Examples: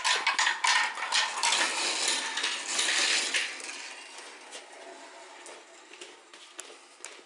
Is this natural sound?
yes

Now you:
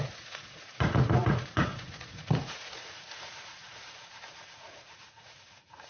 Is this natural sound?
no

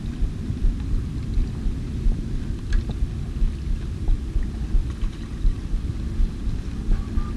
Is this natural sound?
yes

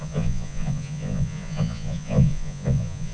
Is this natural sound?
no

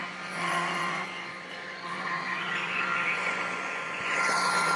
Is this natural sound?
no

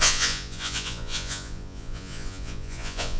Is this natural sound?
no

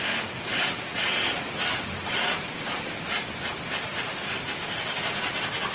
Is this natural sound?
yes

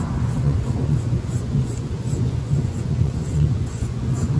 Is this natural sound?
no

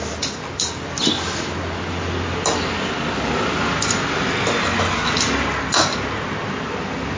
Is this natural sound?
yes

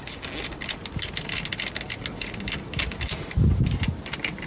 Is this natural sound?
yes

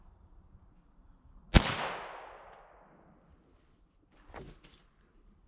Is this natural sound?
yes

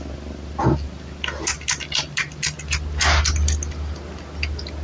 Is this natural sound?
yes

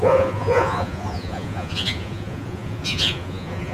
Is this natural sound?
no